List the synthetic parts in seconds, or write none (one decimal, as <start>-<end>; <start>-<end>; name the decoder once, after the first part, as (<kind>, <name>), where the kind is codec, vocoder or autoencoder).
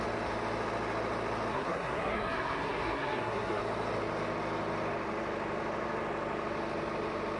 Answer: 1.5-3.6 (codec, SNAC)